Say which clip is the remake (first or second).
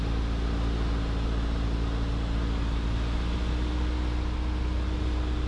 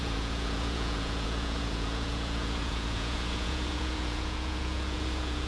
second